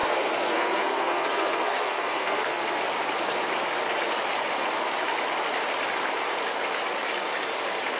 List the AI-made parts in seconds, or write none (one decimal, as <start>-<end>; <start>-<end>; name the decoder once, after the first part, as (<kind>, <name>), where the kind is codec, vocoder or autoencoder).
0.0-2.8 (codec, SNAC)